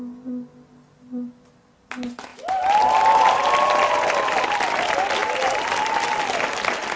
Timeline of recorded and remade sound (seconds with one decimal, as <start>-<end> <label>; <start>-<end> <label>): 0.0-7.0 recorded